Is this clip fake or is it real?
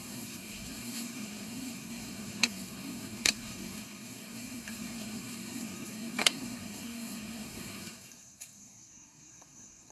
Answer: fake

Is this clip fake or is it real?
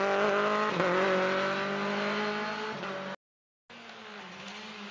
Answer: real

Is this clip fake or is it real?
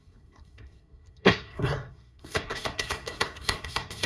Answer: fake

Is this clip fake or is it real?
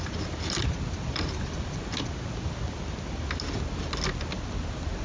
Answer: real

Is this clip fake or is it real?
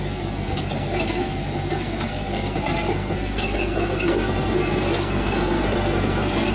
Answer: fake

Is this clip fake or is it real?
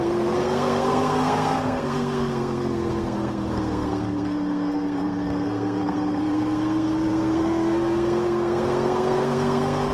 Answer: fake